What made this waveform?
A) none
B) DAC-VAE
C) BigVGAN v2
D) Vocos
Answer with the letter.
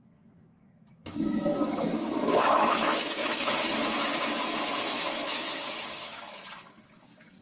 B